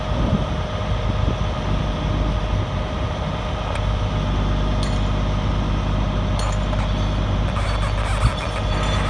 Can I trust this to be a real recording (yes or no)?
yes